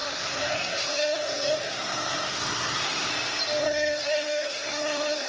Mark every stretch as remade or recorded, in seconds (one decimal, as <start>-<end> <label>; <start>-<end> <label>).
0.0-3.1 remade; 3.1-3.6 recorded; 3.6-5.3 remade